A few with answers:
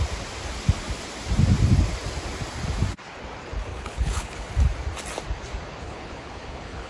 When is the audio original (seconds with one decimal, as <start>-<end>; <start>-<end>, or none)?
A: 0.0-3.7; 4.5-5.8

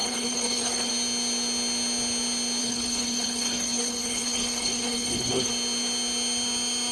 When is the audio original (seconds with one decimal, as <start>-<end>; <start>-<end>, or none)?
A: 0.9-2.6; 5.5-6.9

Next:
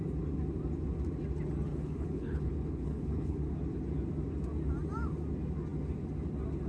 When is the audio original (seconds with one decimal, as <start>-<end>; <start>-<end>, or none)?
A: 0.0-1.7; 3.5-6.7

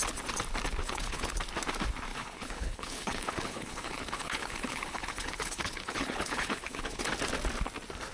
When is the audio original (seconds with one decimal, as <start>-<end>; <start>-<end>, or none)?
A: 0.0-0.8; 1.3-2.1; 7.0-8.1

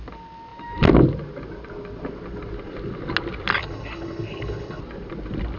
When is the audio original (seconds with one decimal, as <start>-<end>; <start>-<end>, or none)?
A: 0.0-3.6; 4.8-5.6

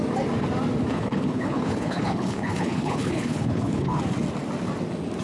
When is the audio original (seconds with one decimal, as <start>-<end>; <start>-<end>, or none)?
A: 0.0-0.9; 4.0-5.2

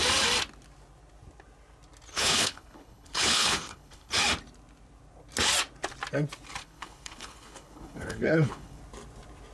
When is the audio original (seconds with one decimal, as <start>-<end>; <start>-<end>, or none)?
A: 0.0-2.1; 4.1-6.6; 8.8-9.5

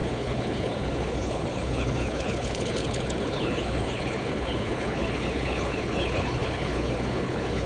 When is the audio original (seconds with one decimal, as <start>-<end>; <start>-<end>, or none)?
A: none